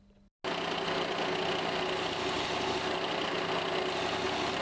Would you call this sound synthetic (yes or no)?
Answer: no